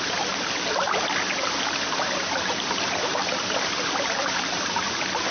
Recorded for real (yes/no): yes